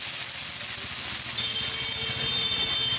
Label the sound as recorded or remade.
recorded